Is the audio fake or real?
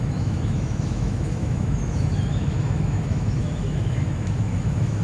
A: fake